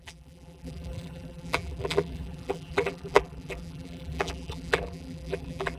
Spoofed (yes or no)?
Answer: yes